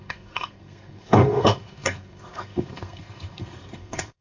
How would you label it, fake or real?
fake